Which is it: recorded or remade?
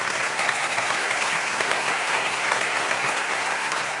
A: remade